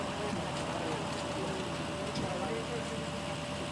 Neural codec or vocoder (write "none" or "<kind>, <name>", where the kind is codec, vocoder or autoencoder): none